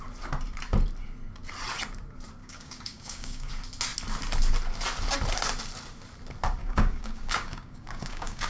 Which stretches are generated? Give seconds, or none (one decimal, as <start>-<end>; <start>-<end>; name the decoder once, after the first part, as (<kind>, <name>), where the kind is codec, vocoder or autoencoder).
2.4-3.5 (codec, DAC); 6.6-8.5